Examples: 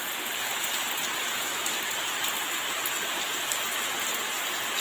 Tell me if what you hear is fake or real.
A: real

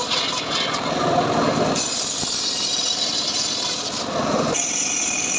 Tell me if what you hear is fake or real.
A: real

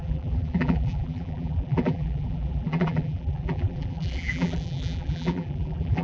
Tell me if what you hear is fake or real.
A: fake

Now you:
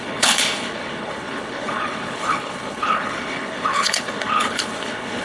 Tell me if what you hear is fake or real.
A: fake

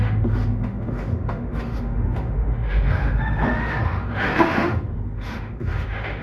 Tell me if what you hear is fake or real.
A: fake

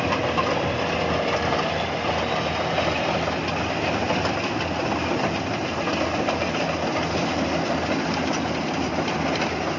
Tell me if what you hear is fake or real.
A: real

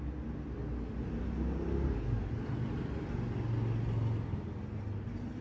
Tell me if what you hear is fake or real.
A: real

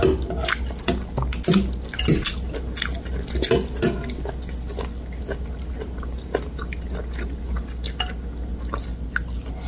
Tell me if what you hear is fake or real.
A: real